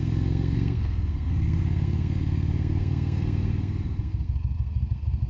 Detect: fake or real fake